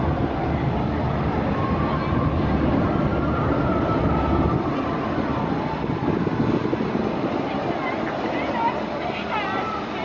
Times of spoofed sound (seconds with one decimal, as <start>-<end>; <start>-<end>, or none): none